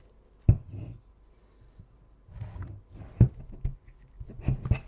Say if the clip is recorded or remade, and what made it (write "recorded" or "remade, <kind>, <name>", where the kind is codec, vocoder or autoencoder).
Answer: recorded